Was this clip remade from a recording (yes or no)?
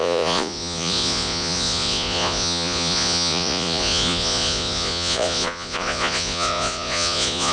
yes